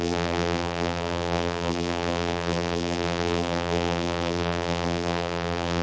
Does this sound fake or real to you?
fake